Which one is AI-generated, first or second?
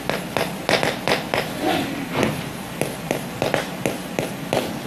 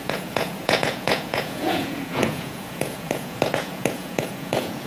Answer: second